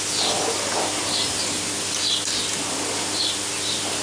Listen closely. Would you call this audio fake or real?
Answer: real